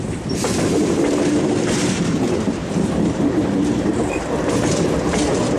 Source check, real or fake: fake